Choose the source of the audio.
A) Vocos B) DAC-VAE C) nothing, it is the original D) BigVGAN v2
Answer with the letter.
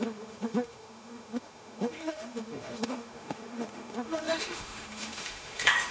B